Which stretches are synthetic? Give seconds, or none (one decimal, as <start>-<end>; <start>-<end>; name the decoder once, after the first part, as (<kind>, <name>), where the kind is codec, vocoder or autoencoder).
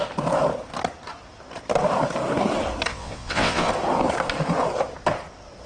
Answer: 2.9-3.7 (vocoder, WaveNeXt)